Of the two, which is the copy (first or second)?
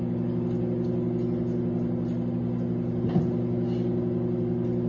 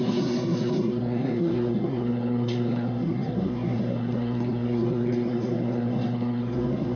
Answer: second